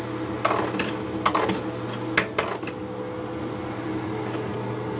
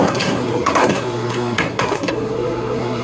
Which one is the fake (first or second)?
second